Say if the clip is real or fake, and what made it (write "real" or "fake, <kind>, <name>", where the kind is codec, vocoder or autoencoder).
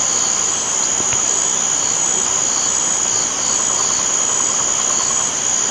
real